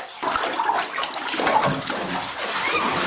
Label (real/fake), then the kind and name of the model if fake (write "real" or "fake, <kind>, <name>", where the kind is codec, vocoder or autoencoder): real